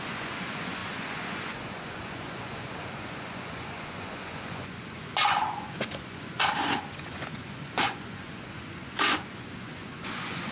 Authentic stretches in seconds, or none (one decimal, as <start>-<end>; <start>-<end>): none